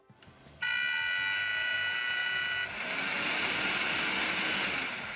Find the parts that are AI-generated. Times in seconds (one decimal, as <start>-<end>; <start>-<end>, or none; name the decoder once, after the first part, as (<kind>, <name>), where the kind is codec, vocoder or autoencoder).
none